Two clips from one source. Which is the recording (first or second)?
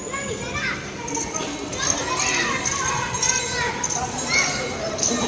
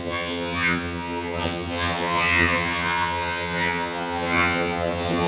first